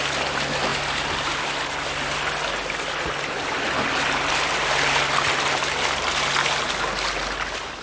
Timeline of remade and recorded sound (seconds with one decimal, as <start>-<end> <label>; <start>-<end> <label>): 0.0-7.8 recorded